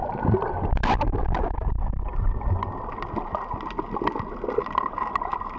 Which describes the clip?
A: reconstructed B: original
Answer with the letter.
B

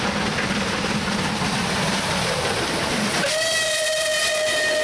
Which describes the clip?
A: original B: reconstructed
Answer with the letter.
A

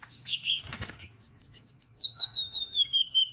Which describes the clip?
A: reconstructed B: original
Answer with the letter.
A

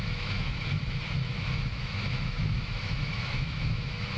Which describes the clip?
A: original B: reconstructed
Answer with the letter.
B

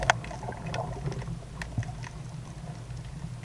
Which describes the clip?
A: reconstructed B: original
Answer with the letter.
B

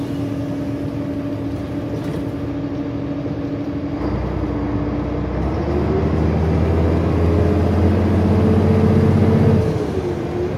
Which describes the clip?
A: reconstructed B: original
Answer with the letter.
B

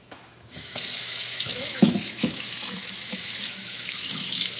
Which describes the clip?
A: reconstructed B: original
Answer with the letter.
A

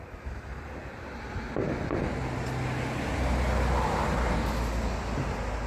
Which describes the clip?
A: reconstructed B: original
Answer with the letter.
B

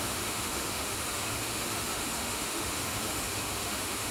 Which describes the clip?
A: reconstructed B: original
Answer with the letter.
A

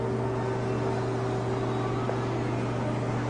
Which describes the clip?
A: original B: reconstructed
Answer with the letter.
A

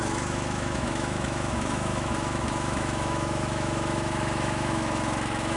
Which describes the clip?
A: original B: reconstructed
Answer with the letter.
B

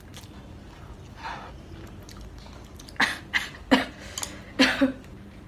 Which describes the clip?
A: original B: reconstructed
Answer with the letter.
A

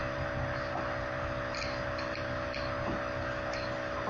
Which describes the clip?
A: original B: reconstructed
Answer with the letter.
A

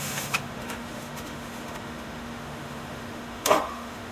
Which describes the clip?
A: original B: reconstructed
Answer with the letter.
B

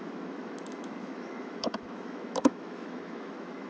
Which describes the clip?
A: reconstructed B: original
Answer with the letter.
A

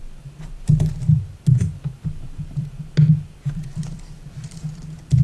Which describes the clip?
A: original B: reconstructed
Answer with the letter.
A